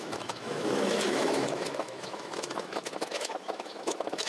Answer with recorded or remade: remade